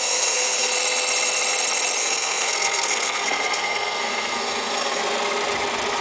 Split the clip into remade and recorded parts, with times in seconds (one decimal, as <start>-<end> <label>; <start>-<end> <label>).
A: 0.0-0.7 remade; 0.7-2.0 recorded; 2.0-5.0 remade; 5.0-6.0 recorded